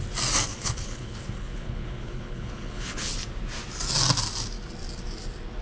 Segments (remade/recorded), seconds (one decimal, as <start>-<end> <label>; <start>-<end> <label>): 0.0-0.5 recorded; 0.5-3.1 remade; 3.1-5.6 recorded